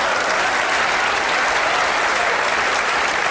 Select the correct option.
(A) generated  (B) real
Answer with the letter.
B